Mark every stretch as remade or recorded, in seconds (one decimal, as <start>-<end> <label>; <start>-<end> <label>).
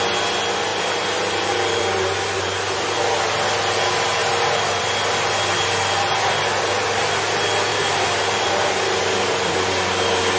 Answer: 0.0-0.7 recorded; 0.7-1.8 remade; 1.8-4.2 recorded; 4.2-4.8 remade; 4.8-7.7 recorded; 7.7-8.7 remade; 8.7-10.4 recorded